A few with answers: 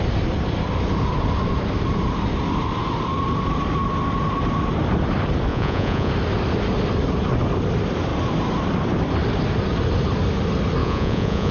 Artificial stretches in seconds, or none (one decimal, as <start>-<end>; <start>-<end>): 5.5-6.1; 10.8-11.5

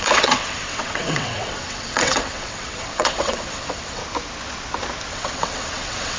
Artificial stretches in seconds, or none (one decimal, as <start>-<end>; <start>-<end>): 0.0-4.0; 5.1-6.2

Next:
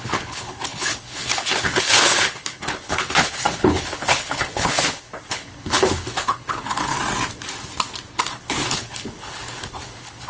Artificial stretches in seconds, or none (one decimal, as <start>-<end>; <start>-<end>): 0.0-7.0; 8.2-10.3